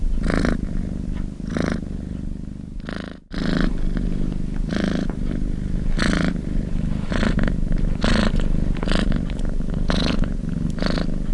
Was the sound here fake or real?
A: real